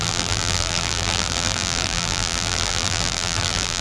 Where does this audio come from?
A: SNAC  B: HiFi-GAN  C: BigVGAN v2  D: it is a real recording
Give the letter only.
C